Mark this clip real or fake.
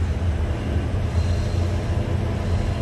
real